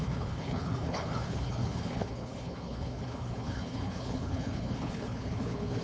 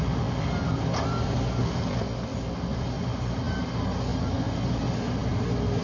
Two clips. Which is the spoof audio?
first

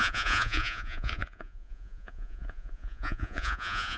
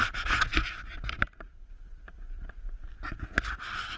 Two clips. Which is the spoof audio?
first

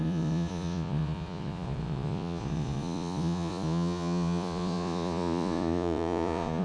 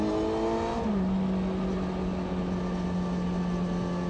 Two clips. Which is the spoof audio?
first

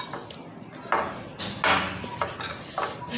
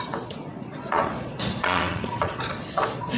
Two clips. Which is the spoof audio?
second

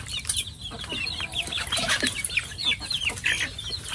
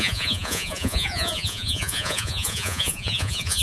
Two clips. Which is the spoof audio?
second